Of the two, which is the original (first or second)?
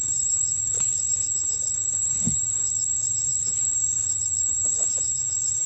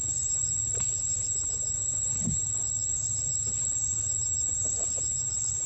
second